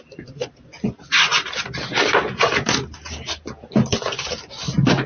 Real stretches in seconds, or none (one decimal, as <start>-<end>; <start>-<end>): 0.0-5.1